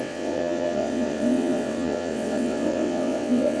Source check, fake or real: fake